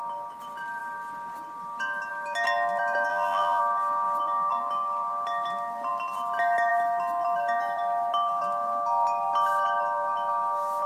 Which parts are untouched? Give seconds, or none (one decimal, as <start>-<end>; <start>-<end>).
0.0-3.1; 3.6-10.9